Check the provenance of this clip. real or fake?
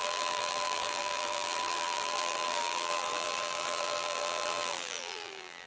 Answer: fake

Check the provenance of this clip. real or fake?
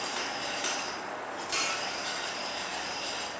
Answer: fake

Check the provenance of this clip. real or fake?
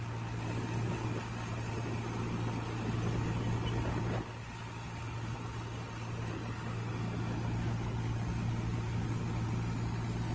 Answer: real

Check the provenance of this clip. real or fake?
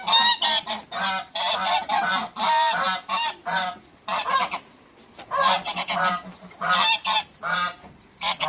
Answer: real